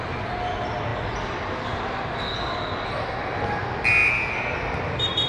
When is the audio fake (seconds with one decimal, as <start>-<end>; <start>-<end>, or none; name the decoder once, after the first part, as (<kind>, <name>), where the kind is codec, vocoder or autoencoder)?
none